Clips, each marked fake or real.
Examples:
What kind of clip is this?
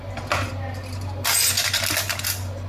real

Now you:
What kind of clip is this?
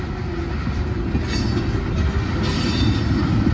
real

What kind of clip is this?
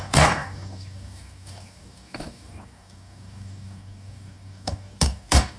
fake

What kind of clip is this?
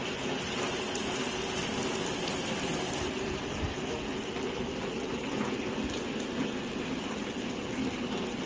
real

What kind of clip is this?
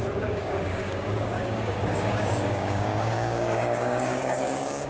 fake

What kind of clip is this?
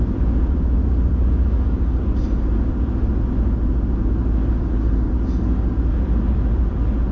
real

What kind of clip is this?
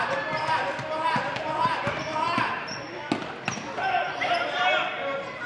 real